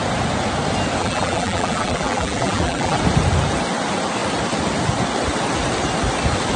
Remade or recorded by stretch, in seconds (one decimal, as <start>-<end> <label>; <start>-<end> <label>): 0.0-1.0 recorded; 1.0-3.0 remade; 3.0-6.6 recorded